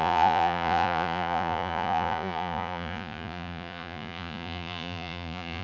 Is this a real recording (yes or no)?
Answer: no